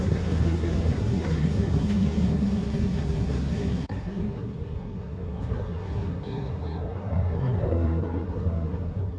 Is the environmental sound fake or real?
fake